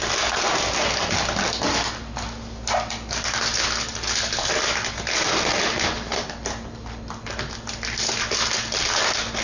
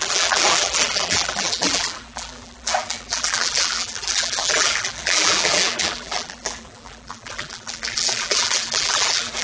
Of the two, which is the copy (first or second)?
second